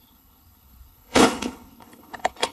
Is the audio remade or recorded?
remade